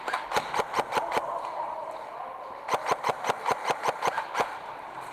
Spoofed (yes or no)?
no